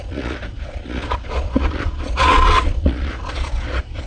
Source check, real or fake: fake